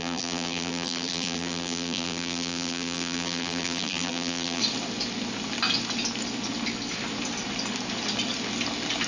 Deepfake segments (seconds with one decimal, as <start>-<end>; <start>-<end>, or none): 0.0-4.6